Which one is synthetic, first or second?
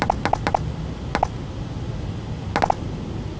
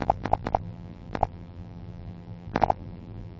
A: second